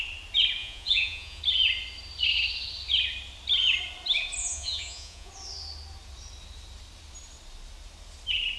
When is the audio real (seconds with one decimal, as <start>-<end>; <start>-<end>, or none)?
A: 0.0-0.6; 1.4-4.4; 5.3-8.6